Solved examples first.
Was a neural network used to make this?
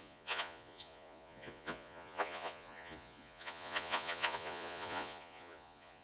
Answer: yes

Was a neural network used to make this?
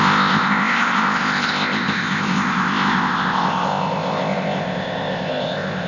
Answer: yes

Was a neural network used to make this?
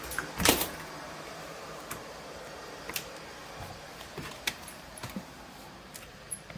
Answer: yes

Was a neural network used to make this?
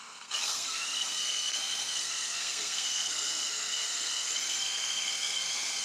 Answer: yes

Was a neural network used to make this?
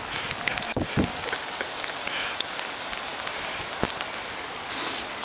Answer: no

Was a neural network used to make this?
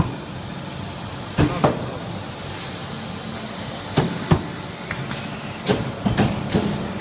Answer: no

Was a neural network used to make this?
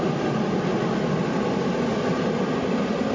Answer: no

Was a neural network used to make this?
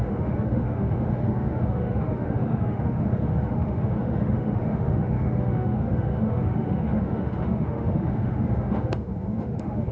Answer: yes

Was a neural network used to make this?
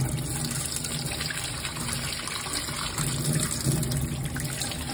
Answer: no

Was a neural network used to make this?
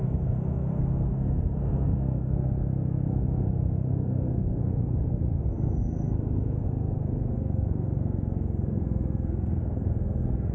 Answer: yes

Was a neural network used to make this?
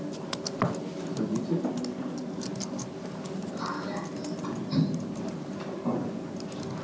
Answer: no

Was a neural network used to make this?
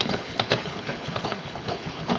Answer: yes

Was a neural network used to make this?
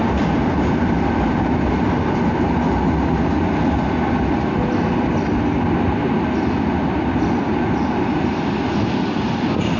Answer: no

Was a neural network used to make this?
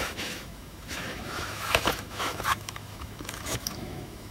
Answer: yes